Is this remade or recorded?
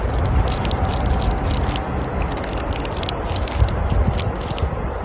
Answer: recorded